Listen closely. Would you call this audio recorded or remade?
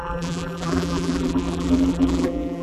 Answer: remade